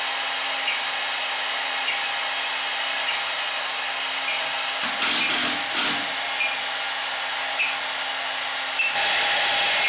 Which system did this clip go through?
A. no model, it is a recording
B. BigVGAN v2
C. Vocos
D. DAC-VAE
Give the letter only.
A